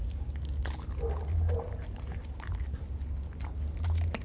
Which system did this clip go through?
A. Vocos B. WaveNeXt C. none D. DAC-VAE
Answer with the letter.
C